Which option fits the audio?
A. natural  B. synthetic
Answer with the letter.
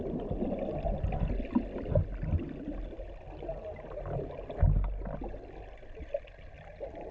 A